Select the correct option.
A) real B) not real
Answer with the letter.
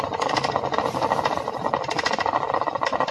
A